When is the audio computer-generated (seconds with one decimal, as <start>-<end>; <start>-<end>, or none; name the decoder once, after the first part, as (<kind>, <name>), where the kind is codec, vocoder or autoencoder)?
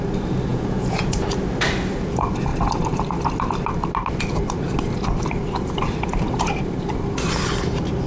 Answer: 0.5-1.1 (vocoder, Vocos)